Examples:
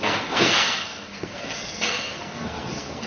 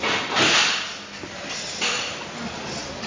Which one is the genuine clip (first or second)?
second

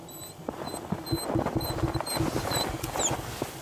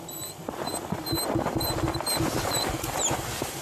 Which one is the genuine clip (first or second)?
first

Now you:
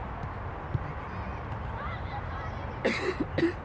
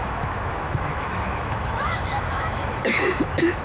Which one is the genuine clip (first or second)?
first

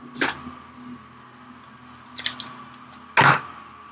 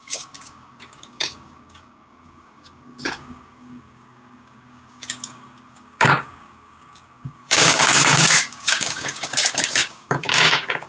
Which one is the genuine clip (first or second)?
first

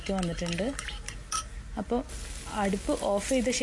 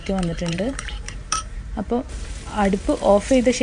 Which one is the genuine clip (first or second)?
first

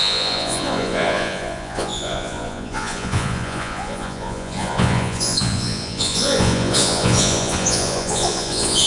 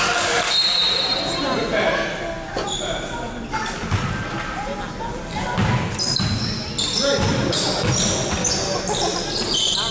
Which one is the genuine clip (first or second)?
second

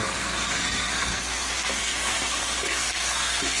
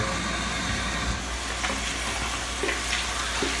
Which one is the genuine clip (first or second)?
second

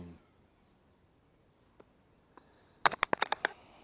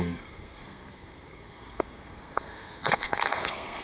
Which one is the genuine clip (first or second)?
first